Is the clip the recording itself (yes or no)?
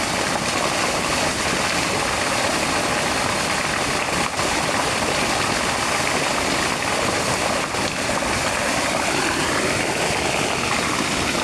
yes